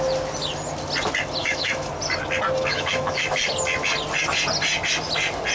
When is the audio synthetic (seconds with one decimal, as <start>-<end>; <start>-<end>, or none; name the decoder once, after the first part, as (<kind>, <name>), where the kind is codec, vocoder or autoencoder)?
1.4-1.9 (autoencoder, DAC-VAE); 2.7-3.4